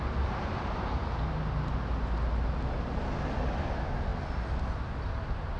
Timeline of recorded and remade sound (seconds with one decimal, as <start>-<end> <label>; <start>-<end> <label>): 0.0-5.6 recorded

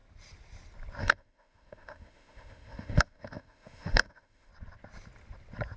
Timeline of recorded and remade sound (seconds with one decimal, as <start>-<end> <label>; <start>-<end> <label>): 0.0-1.0 recorded; 1.0-4.5 remade; 4.5-5.8 recorded

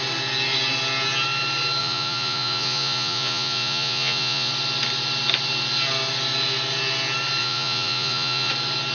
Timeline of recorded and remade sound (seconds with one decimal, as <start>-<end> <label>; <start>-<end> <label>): 0.0-1.8 recorded; 1.8-4.5 remade; 4.5-7.4 recorded; 7.4-8.5 remade; 8.5-8.9 recorded

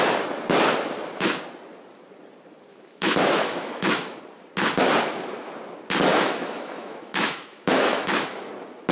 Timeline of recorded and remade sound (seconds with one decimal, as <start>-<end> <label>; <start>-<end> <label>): 0.0-2.7 recorded; 2.7-4.2 remade; 4.2-6.1 recorded; 6.1-8.5 remade; 8.5-8.9 recorded

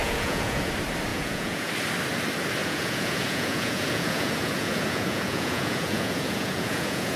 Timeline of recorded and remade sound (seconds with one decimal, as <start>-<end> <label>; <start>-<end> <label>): 0.0-0.7 remade; 0.7-1.1 recorded; 1.1-1.7 remade; 1.7-2.6 recorded; 2.6-7.2 remade